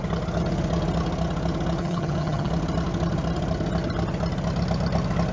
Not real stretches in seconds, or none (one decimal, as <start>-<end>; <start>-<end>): 1.8-2.5